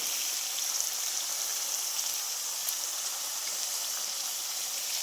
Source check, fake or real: fake